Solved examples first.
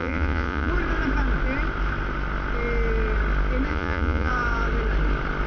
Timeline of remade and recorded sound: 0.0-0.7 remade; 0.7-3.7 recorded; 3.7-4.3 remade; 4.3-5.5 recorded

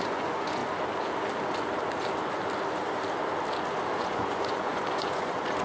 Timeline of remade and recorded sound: 0.0-0.6 remade; 0.6-4.0 recorded; 4.0-5.6 remade